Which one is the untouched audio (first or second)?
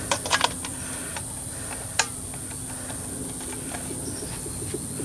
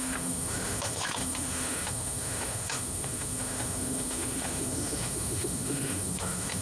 first